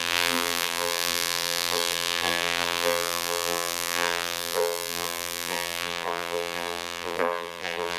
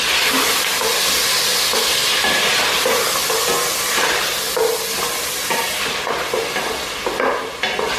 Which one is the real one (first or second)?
second